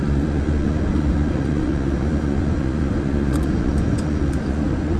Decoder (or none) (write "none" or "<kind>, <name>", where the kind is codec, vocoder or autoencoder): vocoder, Vocos